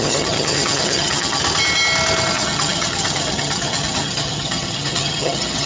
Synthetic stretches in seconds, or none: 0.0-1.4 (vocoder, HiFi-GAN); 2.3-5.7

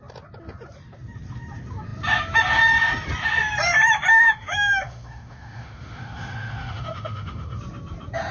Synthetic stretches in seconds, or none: 4.1-7.6 (autoencoder, DAC-VAE)

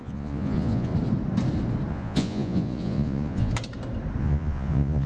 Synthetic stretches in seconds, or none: 0.0-0.9 (vocoder, Vocos); 1.9-3.5; 4.2-5.1